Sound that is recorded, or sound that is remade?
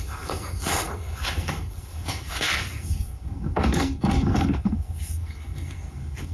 remade